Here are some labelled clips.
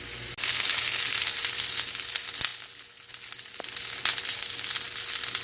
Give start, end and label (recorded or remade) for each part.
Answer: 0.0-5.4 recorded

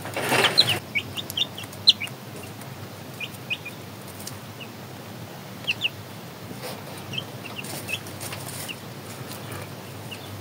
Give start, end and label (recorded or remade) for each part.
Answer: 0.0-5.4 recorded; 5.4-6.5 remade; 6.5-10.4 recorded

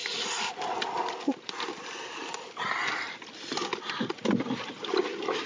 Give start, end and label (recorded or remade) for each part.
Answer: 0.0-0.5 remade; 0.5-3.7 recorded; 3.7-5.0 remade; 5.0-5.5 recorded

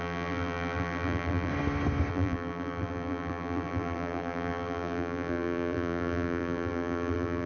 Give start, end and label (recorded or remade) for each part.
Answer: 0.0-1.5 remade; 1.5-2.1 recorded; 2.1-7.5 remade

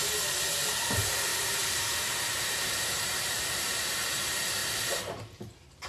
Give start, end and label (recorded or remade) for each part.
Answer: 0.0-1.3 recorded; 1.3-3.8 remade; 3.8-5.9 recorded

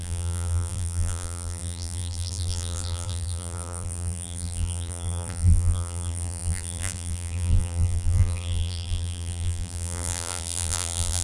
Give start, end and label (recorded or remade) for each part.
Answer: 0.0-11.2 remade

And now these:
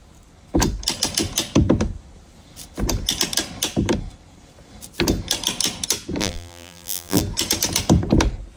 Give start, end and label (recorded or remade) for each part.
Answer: 0.0-6.2 recorded; 6.2-7.2 remade; 7.2-8.6 recorded

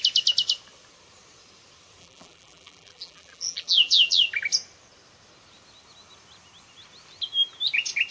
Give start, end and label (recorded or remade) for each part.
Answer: 0.0-2.0 recorded; 2.0-4.1 remade; 4.1-8.1 recorded